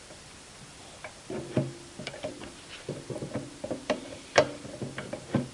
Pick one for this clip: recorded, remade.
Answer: remade